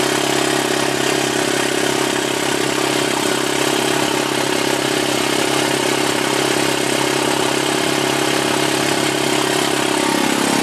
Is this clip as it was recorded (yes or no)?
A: yes